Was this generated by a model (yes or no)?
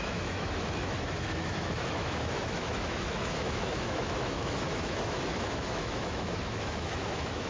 yes